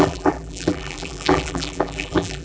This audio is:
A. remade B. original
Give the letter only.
A